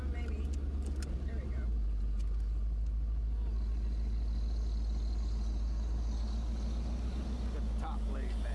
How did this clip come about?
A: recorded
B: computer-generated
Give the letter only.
A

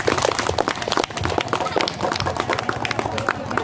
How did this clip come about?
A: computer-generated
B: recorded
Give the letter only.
B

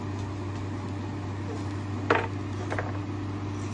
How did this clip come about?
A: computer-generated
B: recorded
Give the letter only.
B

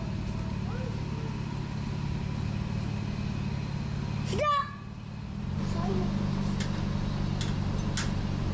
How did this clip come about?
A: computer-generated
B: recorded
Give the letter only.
B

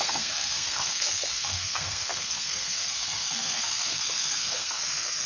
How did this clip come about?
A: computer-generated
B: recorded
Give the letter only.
A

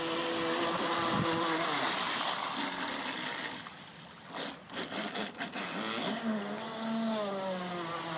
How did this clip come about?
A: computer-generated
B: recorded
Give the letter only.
B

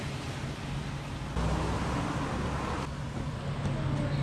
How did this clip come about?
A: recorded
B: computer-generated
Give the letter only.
A